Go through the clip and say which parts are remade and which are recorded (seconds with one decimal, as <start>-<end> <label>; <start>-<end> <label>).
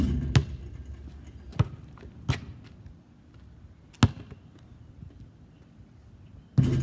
0.0-6.8 recorded